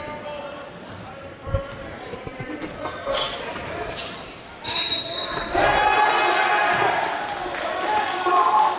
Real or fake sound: fake